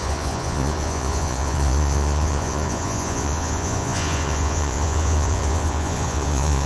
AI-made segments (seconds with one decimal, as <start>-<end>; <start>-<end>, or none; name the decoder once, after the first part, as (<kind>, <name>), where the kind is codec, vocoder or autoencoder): 0.0-6.7 (vocoder, Vocos)